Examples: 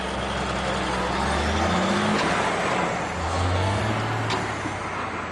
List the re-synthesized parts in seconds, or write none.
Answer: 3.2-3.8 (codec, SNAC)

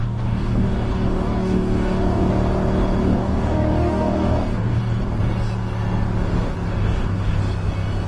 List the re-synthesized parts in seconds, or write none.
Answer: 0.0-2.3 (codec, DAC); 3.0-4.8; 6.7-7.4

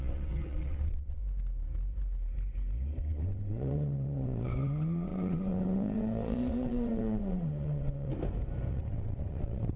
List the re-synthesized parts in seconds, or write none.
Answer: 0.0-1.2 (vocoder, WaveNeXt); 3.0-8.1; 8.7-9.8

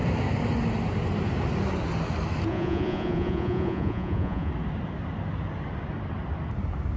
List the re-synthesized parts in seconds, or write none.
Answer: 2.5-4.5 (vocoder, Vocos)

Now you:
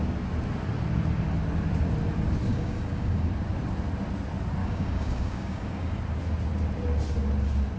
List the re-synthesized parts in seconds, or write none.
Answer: 2.5-3.3 (codec, DAC); 4.6-6.0

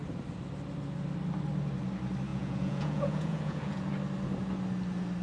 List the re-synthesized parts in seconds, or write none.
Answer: 2.3-3.9 (vocoder, Vocos)

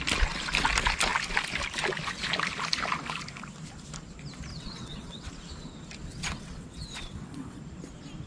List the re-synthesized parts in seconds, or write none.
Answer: 4.5-5.3 (vocoder, WaveNeXt); 6.1-7.6

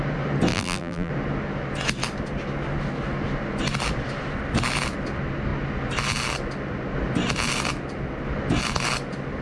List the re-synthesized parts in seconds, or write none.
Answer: 0.5-1.1 (vocoder, BigVGAN v2)